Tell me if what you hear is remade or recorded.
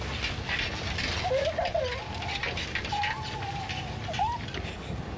recorded